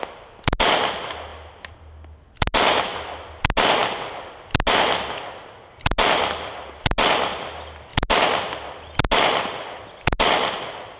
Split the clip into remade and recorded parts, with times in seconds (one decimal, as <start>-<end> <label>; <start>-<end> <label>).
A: 0.0-11.0 recorded